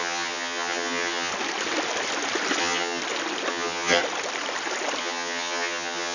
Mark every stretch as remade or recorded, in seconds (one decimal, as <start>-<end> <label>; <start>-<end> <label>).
0.0-1.3 remade; 1.3-2.6 recorded; 2.6-3.0 remade; 3.0-3.5 recorded; 3.5-4.0 remade; 4.0-5.0 recorded; 5.0-6.1 remade